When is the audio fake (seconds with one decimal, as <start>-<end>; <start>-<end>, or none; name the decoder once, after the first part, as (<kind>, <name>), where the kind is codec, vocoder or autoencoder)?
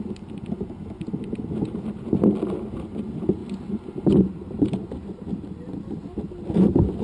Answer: none